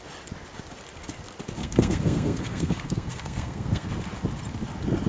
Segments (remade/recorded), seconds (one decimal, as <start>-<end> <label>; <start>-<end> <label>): 0.0-1.6 recorded; 1.6-3.9 remade; 3.9-5.1 recorded